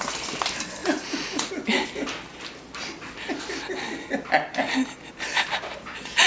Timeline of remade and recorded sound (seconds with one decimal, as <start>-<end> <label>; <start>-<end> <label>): 0.0-0.8 recorded; 0.8-1.5 remade; 1.5-6.3 recorded